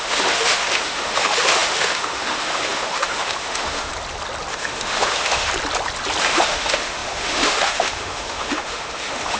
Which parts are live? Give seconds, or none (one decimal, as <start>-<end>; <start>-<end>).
3.9-4.5; 5.5-6.2